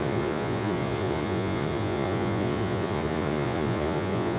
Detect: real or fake fake